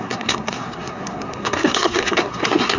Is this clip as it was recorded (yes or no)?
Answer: no